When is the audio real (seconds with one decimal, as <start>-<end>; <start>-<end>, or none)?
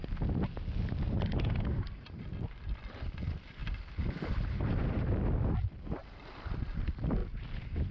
0.0-7.9